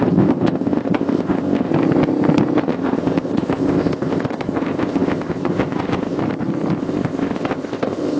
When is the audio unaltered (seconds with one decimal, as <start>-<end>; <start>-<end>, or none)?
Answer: 1.7-2.6; 6.2-6.8